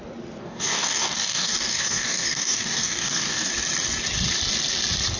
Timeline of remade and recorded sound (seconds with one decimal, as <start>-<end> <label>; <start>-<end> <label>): 0.0-0.4 recorded; 0.4-3.5 remade; 3.5-5.2 recorded